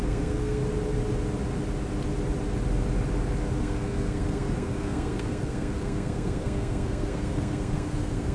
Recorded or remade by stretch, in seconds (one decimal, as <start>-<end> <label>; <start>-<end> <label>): 0.0-0.6 remade; 0.6-3.6 recorded; 3.6-8.3 remade